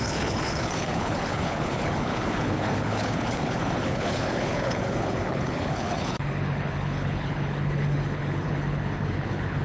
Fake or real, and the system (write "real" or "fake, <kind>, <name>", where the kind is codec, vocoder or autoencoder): fake, codec, HILCodec